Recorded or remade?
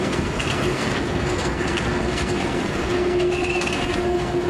remade